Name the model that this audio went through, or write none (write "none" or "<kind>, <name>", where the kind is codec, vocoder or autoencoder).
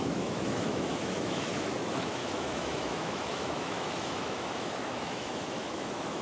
autoencoder, DAC-VAE